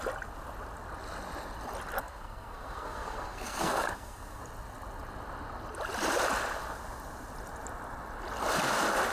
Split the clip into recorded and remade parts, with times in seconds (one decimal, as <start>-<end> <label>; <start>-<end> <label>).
0.0-2.0 recorded; 2.0-4.4 remade; 4.4-9.1 recorded